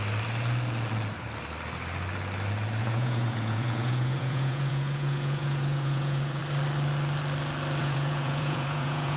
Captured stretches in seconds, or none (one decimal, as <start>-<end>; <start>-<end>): 0.0-2.8; 6.4-7.8